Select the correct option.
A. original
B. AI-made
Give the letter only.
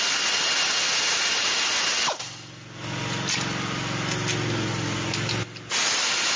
A